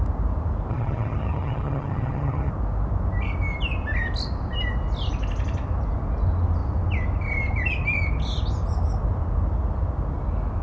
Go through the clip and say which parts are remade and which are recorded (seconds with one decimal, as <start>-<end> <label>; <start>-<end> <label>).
0.0-0.7 recorded; 0.7-2.5 remade; 2.5-10.6 recorded